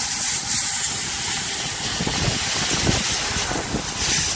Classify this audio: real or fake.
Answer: real